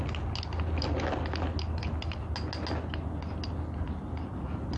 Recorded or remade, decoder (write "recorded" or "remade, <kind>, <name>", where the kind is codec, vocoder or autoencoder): recorded